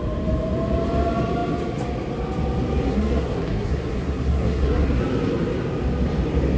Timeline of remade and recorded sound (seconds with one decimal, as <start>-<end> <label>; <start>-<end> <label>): 0.0-2.9 recorded; 2.9-5.0 remade; 5.0-6.6 recorded